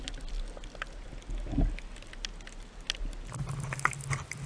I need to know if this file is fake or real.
real